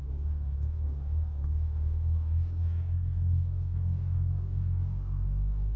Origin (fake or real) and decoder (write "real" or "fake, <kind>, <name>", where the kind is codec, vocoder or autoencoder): fake, codec, DAC